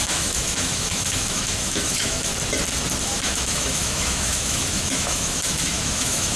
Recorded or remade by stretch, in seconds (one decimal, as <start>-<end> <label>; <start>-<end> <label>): 0.0-2.3 remade; 2.3-3.0 recorded; 3.0-6.4 remade